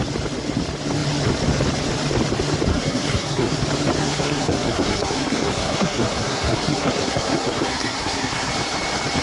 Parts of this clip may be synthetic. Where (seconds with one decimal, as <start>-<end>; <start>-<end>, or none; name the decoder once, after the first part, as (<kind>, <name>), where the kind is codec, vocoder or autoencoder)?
2.7-3.6 (codec, SNAC); 4.0-8.5